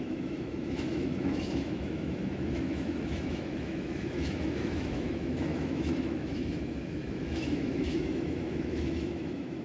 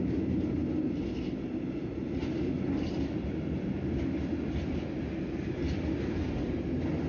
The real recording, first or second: second